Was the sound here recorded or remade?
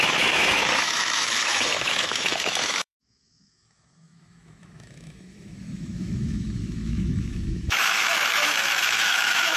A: remade